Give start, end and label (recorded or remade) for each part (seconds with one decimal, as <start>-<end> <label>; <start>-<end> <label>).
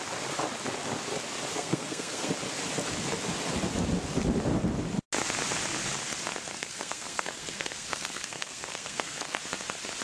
0.0-1.5 recorded; 1.5-2.3 remade; 2.3-6.6 recorded; 6.6-9.4 remade; 9.4-10.0 recorded